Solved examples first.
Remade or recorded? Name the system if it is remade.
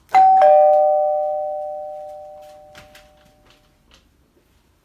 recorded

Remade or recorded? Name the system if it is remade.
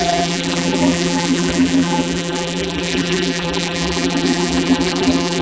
remade, vocoder, BigVGAN v2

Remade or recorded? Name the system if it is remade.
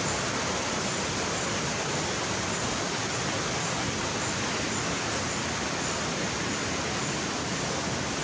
recorded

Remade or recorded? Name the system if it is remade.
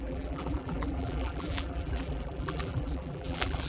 remade, vocoder, BigVGAN v2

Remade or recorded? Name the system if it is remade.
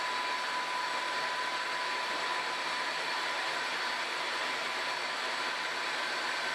recorded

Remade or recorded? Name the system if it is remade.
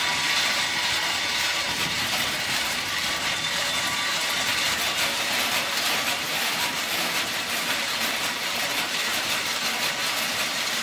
remade, vocoder, BigVGAN v2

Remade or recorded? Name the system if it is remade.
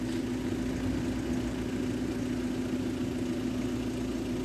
recorded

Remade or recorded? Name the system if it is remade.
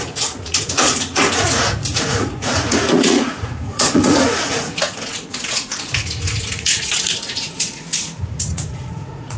remade, vocoder, Vocos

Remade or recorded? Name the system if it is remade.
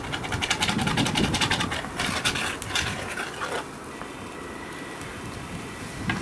recorded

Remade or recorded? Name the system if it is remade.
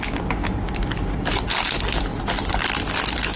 recorded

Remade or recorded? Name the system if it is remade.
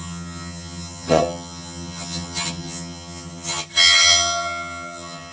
remade, vocoder, HiFi-GAN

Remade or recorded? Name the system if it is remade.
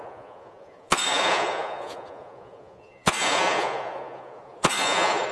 remade, vocoder, Vocos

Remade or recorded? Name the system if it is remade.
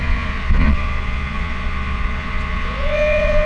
remade, vocoder, Vocos